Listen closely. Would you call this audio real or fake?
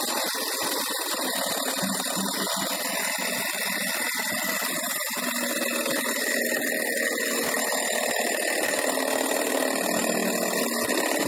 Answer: real